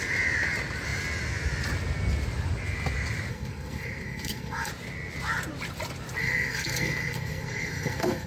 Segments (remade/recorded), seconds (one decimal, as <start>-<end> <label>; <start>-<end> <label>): 0.0-3.3 recorded; 3.3-4.7 remade; 4.7-6.2 recorded; 6.2-8.3 remade